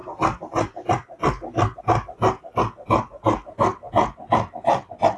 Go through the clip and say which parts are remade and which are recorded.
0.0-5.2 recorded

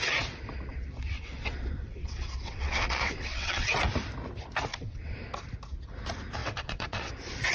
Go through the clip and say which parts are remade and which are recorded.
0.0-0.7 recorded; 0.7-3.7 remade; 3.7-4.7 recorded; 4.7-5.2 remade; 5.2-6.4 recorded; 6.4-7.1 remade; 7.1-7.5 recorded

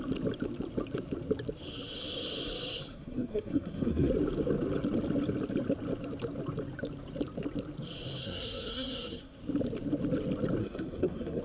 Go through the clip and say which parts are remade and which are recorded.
0.0-2.9 recorded; 2.9-4.1 remade; 4.1-8.2 recorded; 8.2-9.4 remade; 9.4-10.6 recorded; 10.6-11.4 remade

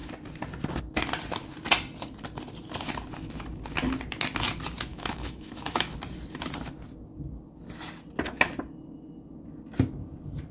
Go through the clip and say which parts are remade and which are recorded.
0.0-4.9 recorded; 4.9-5.9 remade; 5.9-10.5 recorded

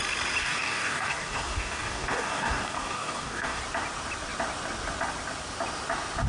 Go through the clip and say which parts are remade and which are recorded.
0.0-0.4 recorded; 0.4-3.6 remade; 3.6-6.3 recorded

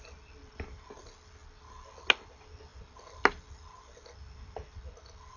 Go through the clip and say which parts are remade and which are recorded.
0.0-5.4 recorded

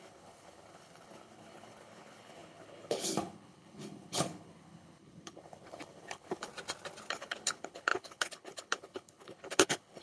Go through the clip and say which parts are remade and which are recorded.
0.0-6.5 remade; 6.5-7.1 recorded; 7.1-10.0 remade

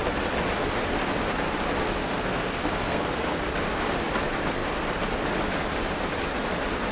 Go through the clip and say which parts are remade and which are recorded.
0.0-2.0 recorded; 2.0-3.5 remade; 3.5-6.9 recorded